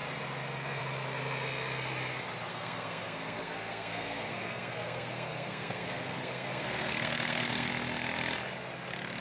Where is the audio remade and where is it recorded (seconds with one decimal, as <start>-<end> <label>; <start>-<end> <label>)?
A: 0.0-2.5 recorded; 2.5-7.7 remade; 7.7-9.2 recorded